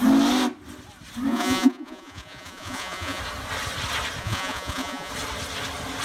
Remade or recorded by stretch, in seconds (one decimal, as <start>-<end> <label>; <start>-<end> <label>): 0.0-1.3 recorded; 1.3-3.2 remade; 3.2-4.2 recorded; 4.2-5.1 remade; 5.1-6.0 recorded